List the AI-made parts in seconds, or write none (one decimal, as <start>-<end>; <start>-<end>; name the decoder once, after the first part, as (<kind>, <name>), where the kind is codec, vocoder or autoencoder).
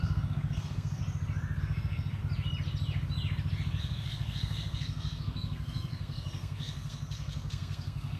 0.0-1.0 (codec, SNAC); 1.6-2.2; 3.8-8.2